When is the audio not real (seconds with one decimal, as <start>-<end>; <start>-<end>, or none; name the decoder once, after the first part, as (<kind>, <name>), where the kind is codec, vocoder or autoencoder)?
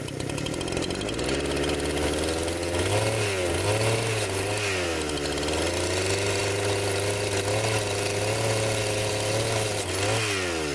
none